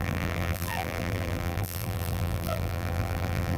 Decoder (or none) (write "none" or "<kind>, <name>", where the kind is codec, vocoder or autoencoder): vocoder, BigVGAN v2